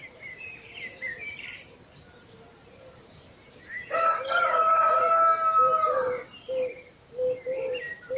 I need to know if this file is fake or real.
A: fake